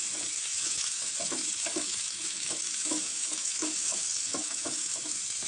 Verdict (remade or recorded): remade